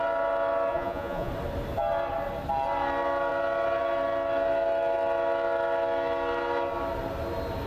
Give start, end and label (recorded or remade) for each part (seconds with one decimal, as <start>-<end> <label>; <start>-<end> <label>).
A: 0.0-0.7 recorded; 0.7-1.3 remade; 1.3-7.7 recorded